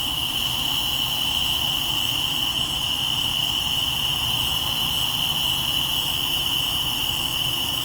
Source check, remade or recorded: recorded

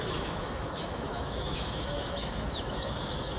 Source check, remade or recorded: remade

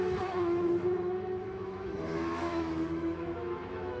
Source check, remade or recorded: remade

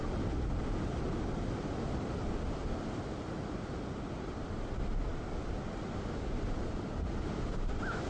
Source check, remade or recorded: recorded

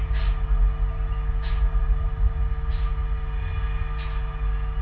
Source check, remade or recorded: recorded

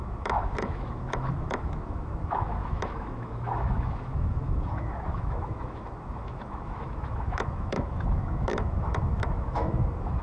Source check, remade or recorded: remade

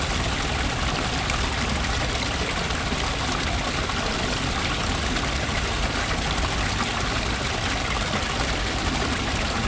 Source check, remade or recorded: recorded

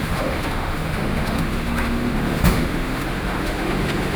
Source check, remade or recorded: remade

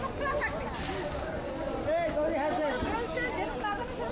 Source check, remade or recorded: recorded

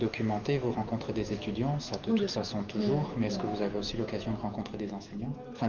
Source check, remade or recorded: remade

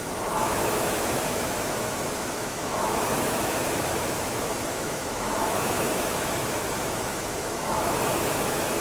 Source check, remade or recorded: remade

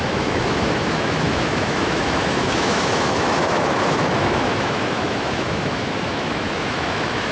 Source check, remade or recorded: remade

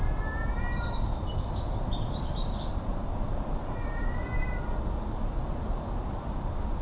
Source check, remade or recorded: recorded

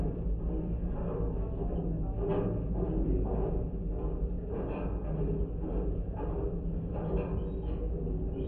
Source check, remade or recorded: recorded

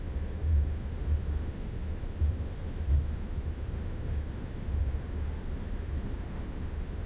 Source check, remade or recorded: remade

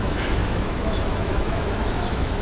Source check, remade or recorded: remade